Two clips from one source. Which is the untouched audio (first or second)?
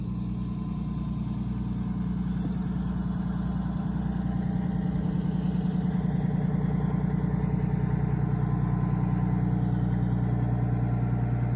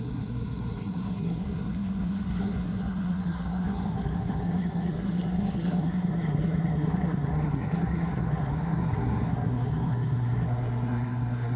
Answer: first